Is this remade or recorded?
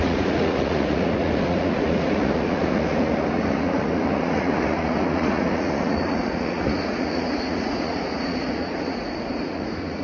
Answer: remade